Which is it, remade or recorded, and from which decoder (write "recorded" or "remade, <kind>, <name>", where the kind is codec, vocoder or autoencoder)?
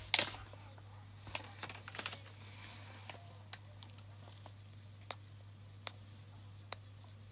recorded